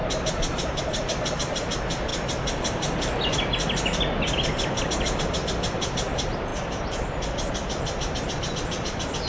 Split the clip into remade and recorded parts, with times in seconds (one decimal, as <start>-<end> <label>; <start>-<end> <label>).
0.0-0.8 recorded; 0.8-2.1 remade; 2.1-5.2 recorded; 5.2-9.3 remade